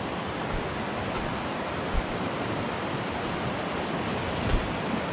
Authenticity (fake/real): real